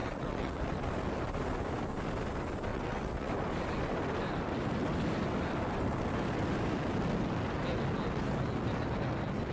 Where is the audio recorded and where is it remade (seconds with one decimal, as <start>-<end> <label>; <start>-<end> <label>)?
0.0-0.6 remade; 0.6-2.7 recorded; 2.7-3.3 remade; 3.3-9.5 recorded